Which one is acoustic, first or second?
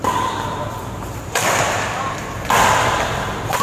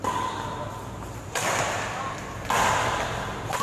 second